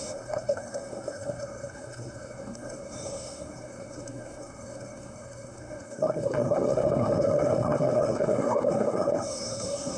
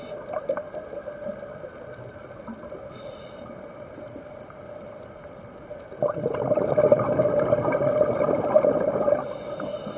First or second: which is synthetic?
first